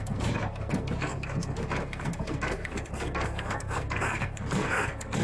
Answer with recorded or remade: remade